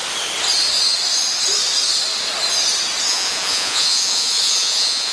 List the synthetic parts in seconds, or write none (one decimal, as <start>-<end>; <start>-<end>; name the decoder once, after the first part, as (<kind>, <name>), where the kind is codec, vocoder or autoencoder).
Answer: 3.1-5.1 (vocoder, Vocos)